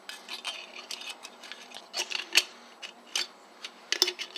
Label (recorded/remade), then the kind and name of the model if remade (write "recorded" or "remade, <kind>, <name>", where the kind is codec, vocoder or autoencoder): recorded